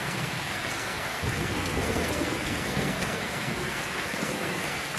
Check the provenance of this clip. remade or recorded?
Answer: remade